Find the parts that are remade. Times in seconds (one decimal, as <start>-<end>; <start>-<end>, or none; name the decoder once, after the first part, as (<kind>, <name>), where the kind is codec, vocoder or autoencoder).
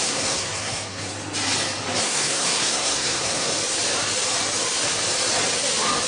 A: 0.0-1.1 (codec, SNAC); 2.0-3.5